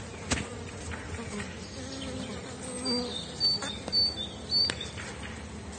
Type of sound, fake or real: real